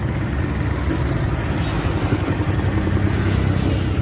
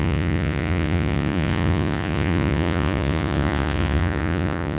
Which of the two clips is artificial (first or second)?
second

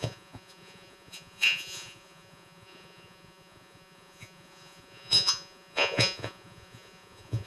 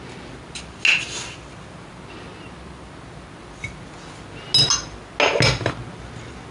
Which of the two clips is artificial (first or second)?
first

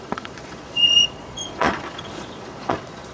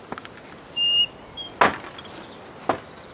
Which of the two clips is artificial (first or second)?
first